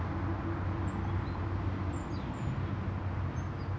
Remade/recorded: recorded